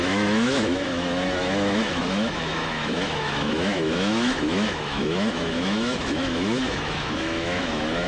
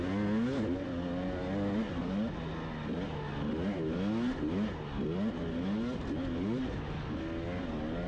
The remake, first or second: first